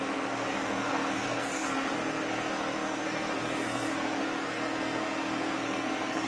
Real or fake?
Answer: fake